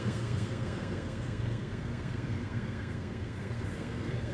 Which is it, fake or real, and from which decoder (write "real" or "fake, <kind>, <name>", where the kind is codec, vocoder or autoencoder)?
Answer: fake, codec, SNAC